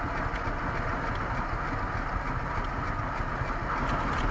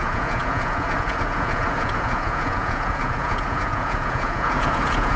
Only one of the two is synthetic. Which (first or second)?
second